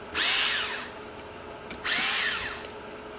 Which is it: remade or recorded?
recorded